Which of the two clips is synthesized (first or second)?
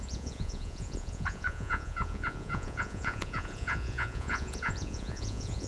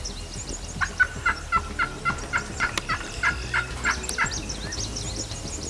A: first